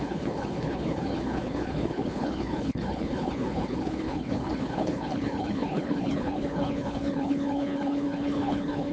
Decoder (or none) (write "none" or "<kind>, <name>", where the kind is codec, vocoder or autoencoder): codec, HILCodec